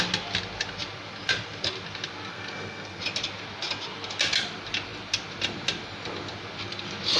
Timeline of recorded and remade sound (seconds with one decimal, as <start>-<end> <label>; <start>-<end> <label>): 0.0-2.3 recorded; 2.3-3.0 remade; 3.0-7.2 recorded